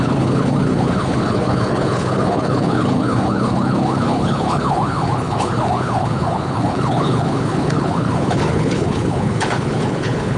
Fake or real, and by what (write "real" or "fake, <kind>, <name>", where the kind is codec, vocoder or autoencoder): fake, codec, HILCodec